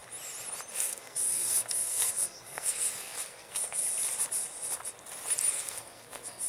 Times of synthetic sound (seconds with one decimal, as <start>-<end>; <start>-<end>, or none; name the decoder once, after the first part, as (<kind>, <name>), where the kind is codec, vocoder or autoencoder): 0.7-3.8 (codec, SNAC); 5.5-6.5